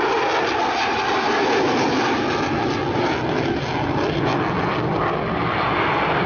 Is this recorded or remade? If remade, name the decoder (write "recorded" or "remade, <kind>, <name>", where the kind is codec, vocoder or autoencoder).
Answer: recorded